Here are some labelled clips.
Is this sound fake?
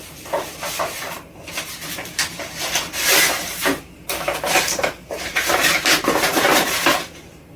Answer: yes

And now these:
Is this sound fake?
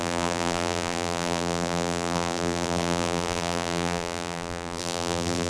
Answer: yes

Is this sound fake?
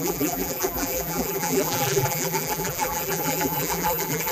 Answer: yes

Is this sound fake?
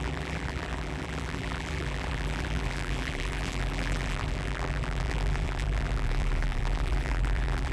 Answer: yes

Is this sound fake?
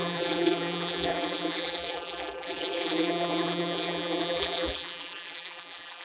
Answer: yes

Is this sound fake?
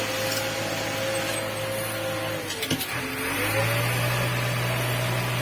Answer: no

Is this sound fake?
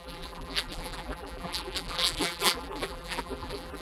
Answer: yes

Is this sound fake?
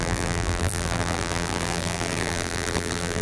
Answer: yes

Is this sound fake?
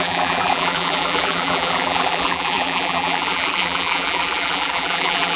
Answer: yes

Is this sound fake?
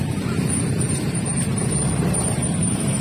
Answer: yes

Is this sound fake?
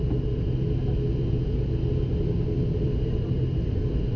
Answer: no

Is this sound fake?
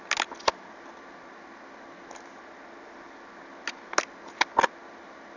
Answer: no